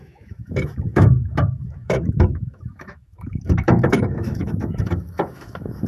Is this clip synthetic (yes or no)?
yes